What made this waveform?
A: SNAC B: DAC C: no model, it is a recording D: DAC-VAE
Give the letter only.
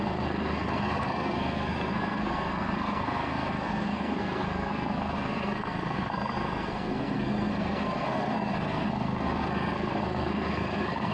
A